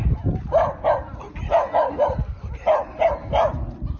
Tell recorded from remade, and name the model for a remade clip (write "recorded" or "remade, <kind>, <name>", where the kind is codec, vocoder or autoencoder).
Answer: recorded